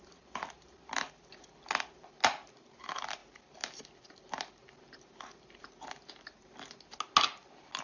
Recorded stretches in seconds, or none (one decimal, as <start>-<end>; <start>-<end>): 0.0-7.8

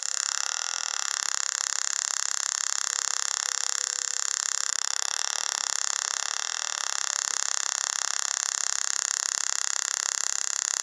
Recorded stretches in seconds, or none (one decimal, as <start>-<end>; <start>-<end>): 0.0-4.7; 5.2-10.8

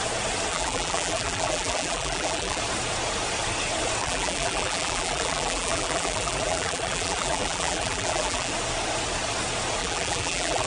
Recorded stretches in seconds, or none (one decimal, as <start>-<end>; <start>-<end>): 0.0-0.5; 2.6-4.0; 8.5-9.8

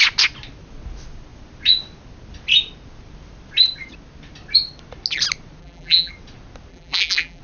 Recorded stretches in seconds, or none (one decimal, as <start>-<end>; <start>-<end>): 0.0-5.6; 6.1-6.7

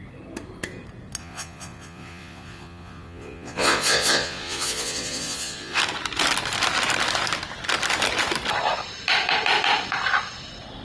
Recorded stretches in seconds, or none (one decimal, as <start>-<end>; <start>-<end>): 0.0-1.2; 5.8-10.8

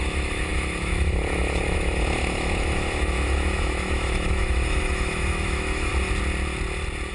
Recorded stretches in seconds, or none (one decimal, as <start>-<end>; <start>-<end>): 5.9-7.1

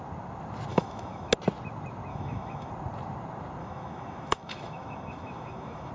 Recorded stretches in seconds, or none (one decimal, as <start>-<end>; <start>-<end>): 0.0-0.7; 1.3-2.1; 2.7-3.6